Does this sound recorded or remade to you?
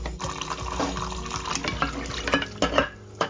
recorded